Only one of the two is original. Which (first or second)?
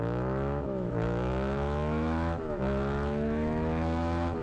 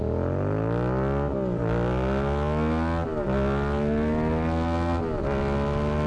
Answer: second